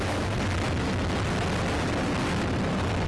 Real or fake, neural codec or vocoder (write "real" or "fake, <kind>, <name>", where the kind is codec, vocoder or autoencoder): real